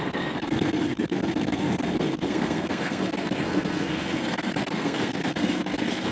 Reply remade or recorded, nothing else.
remade